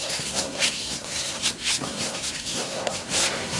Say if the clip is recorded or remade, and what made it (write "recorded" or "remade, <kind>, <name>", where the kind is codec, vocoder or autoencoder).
remade, codec, SNAC